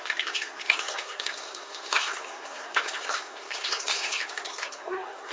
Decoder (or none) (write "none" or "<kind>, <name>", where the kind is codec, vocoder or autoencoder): codec, SNAC